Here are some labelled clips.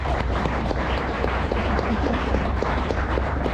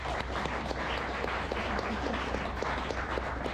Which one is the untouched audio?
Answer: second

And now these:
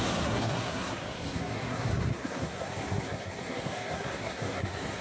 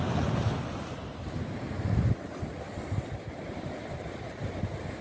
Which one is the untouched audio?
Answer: second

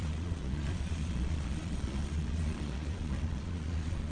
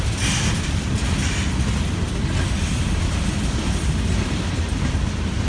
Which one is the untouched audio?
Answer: second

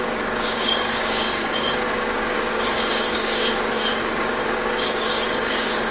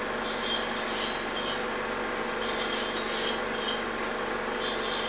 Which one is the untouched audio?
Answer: second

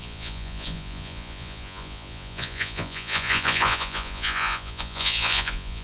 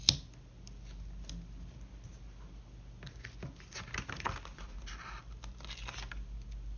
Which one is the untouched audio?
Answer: second